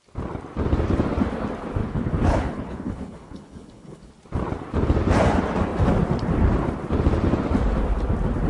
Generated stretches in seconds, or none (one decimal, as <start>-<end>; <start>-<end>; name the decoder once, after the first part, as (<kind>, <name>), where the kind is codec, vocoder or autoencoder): 1.8-4.1 (codec, HILCodec)